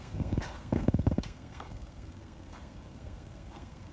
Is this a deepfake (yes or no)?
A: yes